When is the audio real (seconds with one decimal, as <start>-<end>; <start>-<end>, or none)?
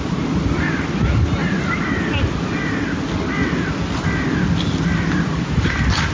0.0-6.1